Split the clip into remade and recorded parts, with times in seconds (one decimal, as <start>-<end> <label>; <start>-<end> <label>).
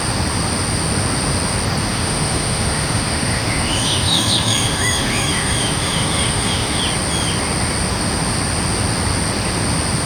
0.0-1.9 recorded; 1.9-6.8 remade; 6.8-10.1 recorded